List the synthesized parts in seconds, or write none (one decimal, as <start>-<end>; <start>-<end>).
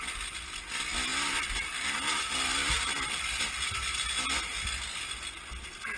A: none